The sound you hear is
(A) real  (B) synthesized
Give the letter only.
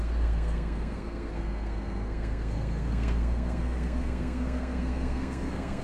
B